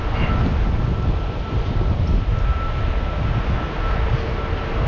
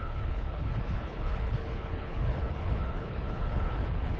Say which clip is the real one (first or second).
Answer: first